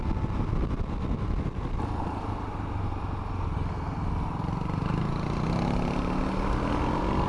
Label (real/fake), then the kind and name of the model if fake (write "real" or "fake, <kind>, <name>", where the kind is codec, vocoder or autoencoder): real